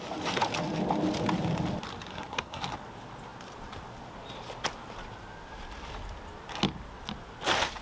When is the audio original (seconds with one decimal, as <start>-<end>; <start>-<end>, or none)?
0.0-2.1; 2.6-7.8